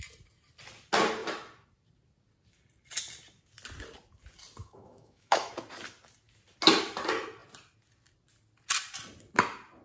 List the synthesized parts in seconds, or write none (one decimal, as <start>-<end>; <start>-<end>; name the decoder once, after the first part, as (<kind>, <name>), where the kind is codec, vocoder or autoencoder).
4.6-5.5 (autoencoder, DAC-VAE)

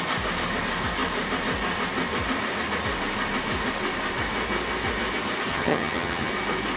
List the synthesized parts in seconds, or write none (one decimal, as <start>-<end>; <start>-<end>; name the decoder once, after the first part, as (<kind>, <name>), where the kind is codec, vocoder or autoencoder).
5.5-6.3 (vocoder, HiFi-GAN)

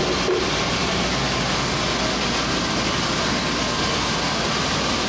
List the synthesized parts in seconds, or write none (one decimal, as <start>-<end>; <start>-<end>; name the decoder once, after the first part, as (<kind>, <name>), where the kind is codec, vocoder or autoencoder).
none

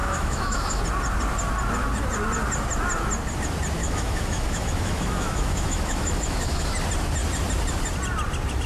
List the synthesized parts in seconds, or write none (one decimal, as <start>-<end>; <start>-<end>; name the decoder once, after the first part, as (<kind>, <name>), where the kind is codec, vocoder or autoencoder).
0.0-0.8 (autoencoder, DAC-VAE); 3.8-6.7

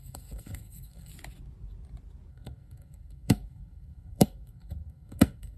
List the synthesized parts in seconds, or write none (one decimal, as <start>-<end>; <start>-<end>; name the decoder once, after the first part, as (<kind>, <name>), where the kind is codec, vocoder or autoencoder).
0.0-1.1 (codec, SNAC); 2.3-5.6